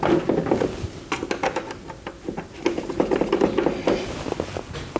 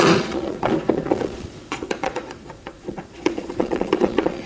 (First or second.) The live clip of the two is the first